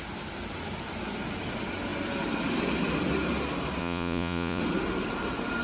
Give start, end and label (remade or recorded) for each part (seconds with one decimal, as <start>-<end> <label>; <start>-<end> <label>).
0.0-3.8 recorded; 3.8-4.6 remade; 4.6-5.6 recorded